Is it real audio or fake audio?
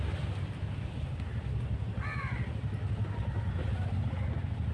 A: real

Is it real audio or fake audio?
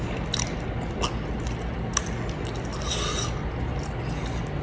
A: real